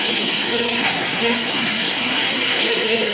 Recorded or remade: remade